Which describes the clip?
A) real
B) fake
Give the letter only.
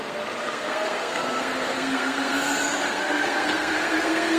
B